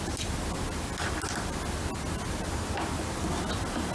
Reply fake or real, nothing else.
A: real